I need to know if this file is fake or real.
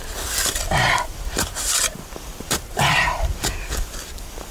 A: fake